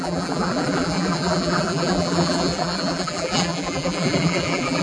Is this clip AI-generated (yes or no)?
yes